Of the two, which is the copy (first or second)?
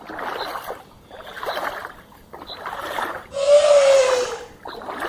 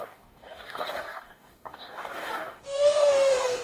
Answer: second